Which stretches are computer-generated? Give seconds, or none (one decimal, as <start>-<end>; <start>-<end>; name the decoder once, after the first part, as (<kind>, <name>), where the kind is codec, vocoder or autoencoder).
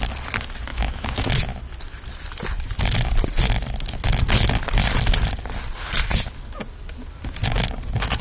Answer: 0.7-1.3 (autoencoder, DAC-VAE)